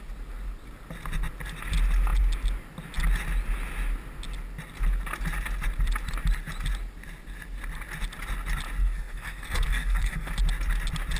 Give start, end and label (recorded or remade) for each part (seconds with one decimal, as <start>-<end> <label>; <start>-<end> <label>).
0.0-8.8 recorded; 8.8-10.3 remade; 10.3-11.2 recorded